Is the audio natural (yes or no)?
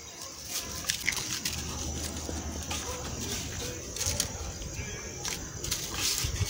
yes